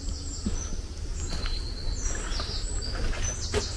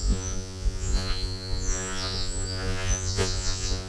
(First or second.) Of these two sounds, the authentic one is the first